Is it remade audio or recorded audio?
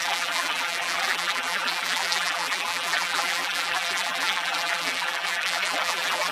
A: remade